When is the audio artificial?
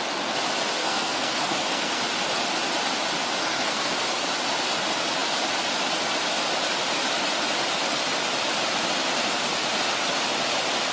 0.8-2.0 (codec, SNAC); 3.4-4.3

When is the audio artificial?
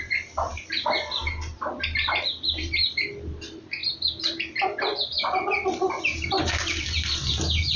none